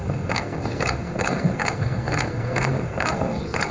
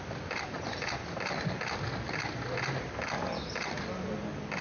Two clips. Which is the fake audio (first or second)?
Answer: first